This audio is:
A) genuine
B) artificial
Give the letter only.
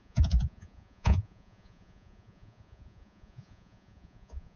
B